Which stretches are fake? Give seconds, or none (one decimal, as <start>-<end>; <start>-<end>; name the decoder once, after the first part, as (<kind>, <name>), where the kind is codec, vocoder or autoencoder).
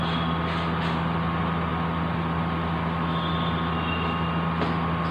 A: none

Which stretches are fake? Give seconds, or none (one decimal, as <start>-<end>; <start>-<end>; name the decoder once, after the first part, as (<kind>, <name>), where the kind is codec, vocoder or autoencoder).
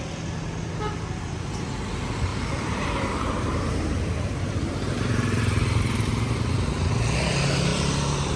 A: 2.3-6.9 (vocoder, BigVGAN v2)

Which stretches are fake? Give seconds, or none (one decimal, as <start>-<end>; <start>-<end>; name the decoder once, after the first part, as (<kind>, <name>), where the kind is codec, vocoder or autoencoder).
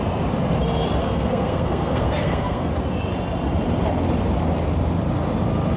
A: 1.0-2.7 (codec, SNAC)